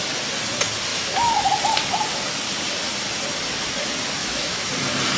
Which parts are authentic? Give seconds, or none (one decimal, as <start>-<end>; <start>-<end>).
0.0-0.9; 1.5-4.2; 4.7-5.2